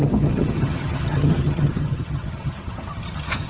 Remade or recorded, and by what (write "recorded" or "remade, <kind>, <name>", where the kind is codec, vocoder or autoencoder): remade, vocoder, HiFi-GAN